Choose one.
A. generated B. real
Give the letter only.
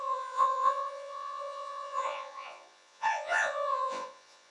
A